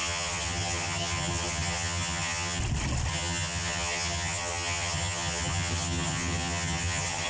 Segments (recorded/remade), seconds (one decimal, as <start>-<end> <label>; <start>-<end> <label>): 0.0-2.6 remade; 2.6-3.1 recorded; 3.1-7.3 remade